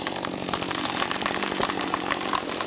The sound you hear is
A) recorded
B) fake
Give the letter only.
B